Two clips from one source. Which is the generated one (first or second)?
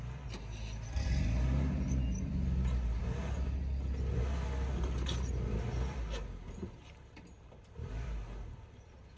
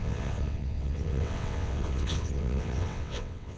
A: second